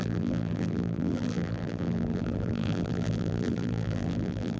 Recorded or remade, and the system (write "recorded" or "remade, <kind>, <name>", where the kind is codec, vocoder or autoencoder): remade, vocoder, BigVGAN v2